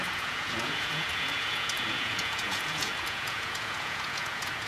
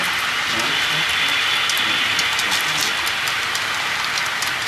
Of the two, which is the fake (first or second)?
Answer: first